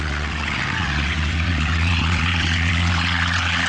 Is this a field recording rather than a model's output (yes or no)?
no